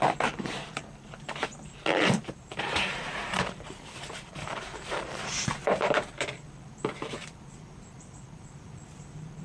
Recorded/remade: remade